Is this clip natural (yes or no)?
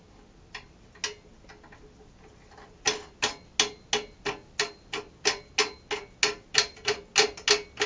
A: yes